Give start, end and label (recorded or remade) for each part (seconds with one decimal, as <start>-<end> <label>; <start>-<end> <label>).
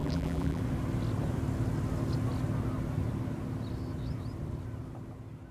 0.0-0.6 remade; 0.6-5.5 recorded